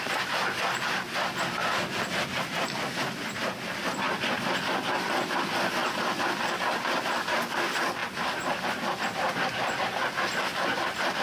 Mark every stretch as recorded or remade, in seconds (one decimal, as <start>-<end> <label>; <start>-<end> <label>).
0.0-1.6 recorded; 1.6-2.1 remade; 2.1-5.8 recorded; 5.8-6.4 remade; 6.4-11.2 recorded